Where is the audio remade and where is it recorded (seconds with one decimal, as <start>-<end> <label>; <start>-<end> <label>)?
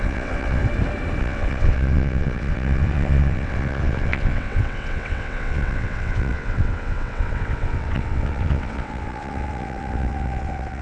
0.0-0.6 remade; 0.6-1.2 recorded; 1.2-10.8 remade